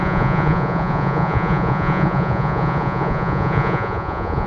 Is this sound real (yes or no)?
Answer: no